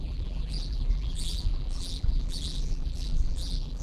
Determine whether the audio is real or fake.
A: fake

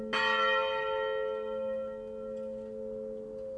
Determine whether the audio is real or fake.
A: real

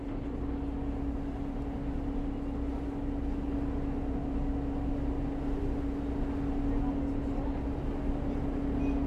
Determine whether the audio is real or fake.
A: real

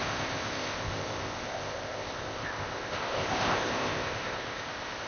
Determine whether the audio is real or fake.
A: fake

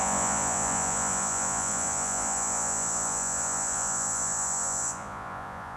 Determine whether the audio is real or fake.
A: fake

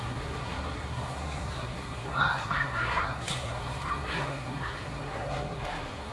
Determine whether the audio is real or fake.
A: fake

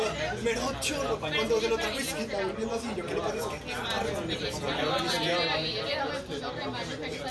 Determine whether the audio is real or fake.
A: real